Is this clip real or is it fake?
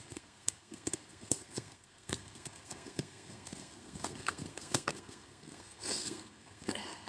fake